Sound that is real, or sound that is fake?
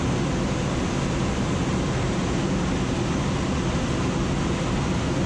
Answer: real